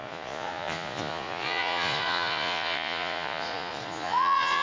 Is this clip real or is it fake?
fake